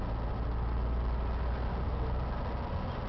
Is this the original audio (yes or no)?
yes